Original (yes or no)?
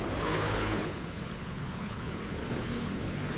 no